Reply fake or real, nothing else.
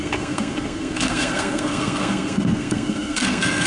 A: fake